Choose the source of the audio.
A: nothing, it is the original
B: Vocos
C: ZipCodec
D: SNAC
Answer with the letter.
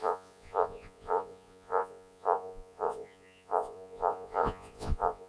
B